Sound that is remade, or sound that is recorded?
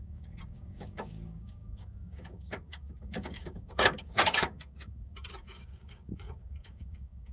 remade